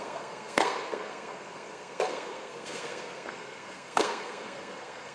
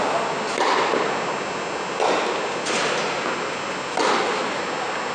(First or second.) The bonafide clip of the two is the second